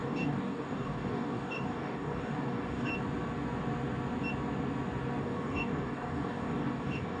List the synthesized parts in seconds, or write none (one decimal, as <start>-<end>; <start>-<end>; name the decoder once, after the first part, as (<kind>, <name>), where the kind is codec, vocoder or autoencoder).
0.0-2.9 (codec, DAC); 5.2-7.2